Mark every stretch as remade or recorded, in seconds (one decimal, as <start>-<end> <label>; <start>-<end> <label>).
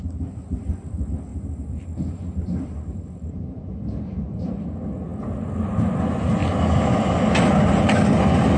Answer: 0.0-1.3 recorded; 1.3-4.6 remade; 4.6-8.6 recorded